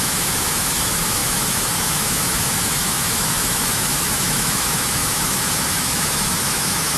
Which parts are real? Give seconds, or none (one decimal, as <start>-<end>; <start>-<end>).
none